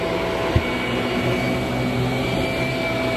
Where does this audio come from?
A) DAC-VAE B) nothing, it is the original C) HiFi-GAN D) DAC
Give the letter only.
B